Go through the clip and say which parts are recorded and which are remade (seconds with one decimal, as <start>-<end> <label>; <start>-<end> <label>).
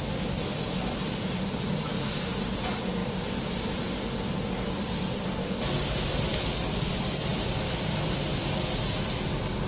0.0-9.7 recorded